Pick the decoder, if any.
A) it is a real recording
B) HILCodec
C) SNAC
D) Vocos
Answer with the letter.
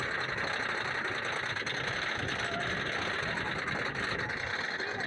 A